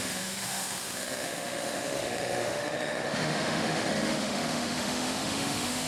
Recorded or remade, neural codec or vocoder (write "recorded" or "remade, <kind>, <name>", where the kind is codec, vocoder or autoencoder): remade, autoencoder, DAC-VAE